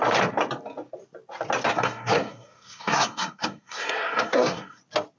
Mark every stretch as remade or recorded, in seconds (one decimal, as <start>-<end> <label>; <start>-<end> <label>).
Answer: 0.0-1.7 recorded; 1.7-4.8 remade; 4.8-5.2 recorded